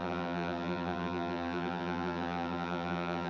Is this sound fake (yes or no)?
yes